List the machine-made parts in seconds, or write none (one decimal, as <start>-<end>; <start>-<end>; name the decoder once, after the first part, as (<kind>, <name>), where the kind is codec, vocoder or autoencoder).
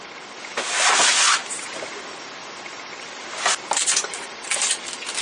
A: none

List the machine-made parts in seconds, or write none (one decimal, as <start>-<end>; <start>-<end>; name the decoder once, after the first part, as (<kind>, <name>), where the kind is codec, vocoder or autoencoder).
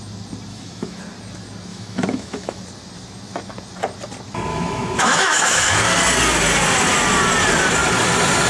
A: 0.5-1.0 (autoencoder, DAC-VAE); 1.7-2.6; 4.5-5.8